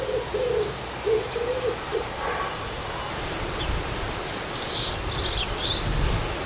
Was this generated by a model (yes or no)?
no